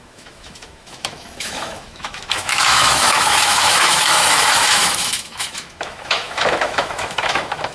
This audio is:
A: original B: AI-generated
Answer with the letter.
B